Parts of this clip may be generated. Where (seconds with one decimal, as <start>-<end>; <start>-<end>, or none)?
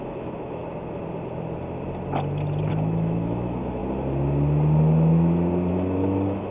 0.0-0.6; 2.7-3.8; 5.7-6.5